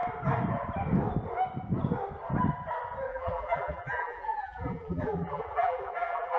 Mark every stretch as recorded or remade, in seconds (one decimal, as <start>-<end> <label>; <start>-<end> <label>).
0.0-3.1 recorded; 3.1-6.4 remade

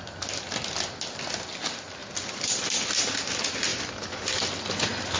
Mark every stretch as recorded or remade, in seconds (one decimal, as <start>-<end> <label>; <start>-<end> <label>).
0.0-2.0 recorded; 2.0-2.6 remade; 2.6-3.7 recorded; 3.7-4.8 remade; 4.8-5.2 recorded